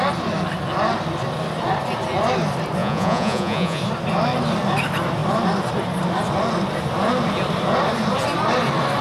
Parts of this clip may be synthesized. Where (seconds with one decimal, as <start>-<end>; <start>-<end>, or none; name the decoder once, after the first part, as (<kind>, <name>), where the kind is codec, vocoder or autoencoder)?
2.8-3.8 (vocoder, Vocos)